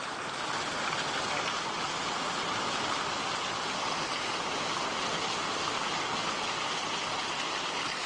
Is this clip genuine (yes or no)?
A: yes